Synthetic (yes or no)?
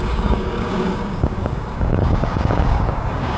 yes